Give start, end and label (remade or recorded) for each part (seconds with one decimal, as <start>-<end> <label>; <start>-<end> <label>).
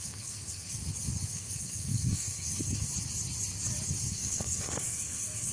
0.0-0.8 remade; 0.8-1.3 recorded; 1.3-2.9 remade; 2.9-4.1 recorded; 4.1-5.5 remade